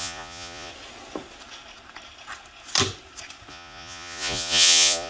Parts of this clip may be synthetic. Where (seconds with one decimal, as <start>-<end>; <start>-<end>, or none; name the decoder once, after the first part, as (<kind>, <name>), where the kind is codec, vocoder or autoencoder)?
0.0-0.7 (vocoder, Vocos); 3.5-5.1